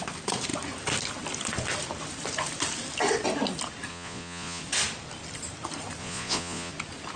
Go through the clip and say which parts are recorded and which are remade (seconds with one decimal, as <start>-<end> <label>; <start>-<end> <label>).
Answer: 0.0-3.9 recorded; 3.9-4.6 remade; 4.6-6.0 recorded; 6.0-6.7 remade; 6.7-7.2 recorded